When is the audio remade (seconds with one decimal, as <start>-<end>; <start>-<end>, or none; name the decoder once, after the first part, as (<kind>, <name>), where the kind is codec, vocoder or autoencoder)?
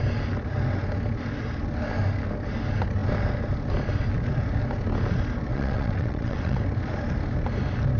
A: 5.5-6.6 (vocoder, WaveNeXt)